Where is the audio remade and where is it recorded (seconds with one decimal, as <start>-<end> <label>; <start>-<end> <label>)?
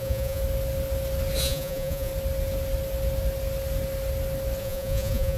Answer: 0.0-0.4 remade; 0.4-1.4 recorded; 1.4-2.1 remade; 2.1-4.6 recorded; 4.6-5.4 remade